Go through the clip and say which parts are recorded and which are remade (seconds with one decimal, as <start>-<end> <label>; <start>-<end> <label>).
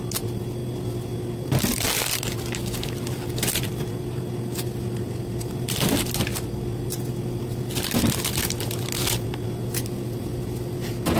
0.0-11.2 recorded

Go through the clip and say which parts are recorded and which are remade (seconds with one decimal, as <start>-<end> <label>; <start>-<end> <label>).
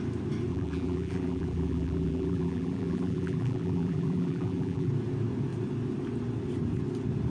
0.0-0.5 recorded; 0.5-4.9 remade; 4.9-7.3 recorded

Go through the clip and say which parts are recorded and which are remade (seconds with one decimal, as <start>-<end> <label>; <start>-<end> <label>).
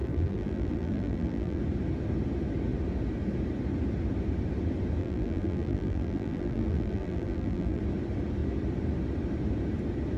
0.0-1.6 remade; 1.6-5.0 recorded; 5.0-7.8 remade; 7.8-10.2 recorded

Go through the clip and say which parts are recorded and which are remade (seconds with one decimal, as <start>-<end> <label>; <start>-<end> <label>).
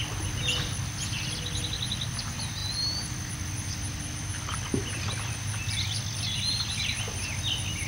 0.0-7.9 recorded